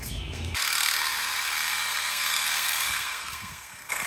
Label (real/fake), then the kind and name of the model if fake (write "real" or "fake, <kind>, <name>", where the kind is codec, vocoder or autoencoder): fake, codec, SNAC